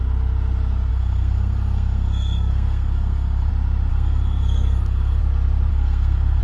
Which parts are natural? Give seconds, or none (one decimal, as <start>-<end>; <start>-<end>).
0.0-0.9; 3.5-3.9; 5.2-5.7

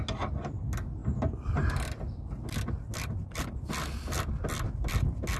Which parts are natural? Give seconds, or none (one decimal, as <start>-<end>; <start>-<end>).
0.0-5.4

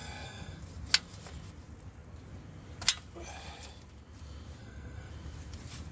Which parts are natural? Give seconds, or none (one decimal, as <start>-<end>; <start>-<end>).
0.6-4.6; 5.1-5.9

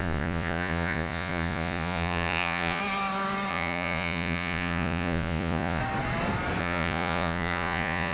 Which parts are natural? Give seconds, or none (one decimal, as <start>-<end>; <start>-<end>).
2.8-3.5; 5.8-6.6